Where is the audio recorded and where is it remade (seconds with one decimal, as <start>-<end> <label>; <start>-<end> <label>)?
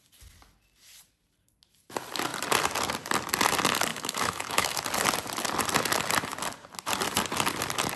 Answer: 0.0-3.9 recorded; 3.9-4.8 remade; 4.8-8.0 recorded